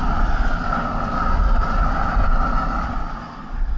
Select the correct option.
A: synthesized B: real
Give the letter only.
B